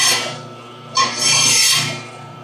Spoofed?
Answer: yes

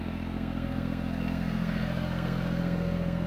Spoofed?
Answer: yes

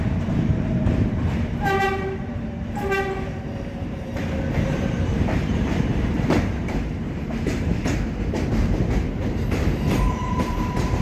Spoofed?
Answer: yes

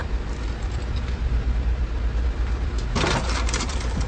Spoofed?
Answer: no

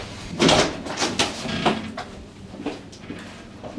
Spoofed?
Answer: no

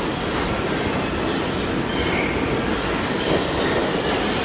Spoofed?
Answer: no